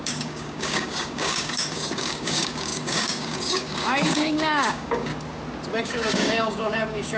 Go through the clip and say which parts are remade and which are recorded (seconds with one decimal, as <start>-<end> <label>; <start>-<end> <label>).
0.0-5.1 remade; 5.1-5.8 recorded; 5.8-7.2 remade